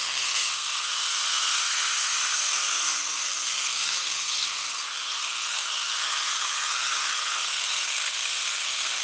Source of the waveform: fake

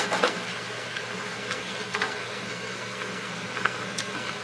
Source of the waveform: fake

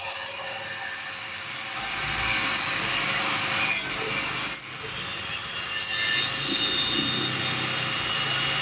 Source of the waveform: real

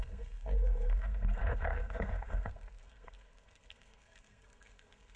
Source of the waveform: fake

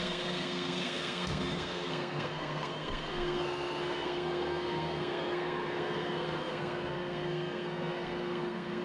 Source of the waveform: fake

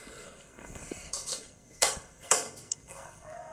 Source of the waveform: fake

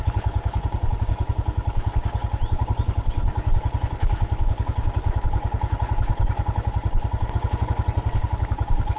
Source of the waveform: real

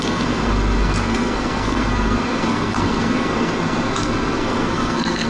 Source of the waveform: fake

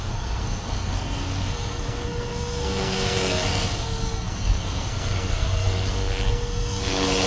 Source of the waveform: fake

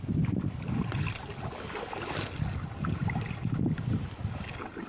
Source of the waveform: real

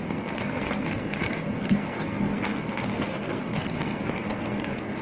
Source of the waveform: fake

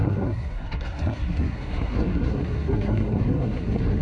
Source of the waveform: fake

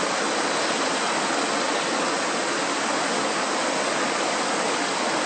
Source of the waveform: real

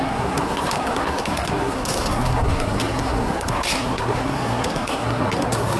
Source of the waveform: fake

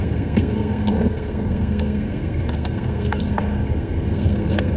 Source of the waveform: fake